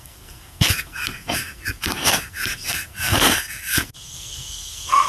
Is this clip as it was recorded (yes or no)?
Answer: no